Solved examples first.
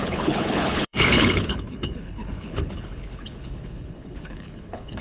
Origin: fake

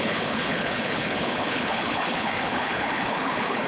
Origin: fake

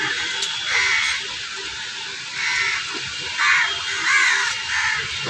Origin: real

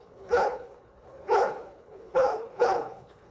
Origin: fake